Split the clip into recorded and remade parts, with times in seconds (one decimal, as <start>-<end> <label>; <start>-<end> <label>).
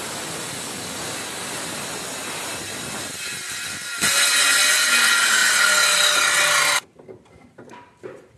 0.0-8.4 recorded